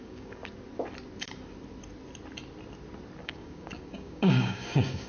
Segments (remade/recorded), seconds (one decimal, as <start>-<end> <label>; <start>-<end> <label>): 0.0-0.4 remade; 0.4-3.2 recorded; 3.2-5.1 remade